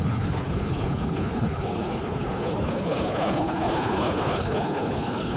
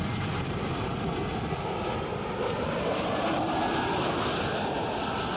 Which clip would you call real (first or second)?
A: second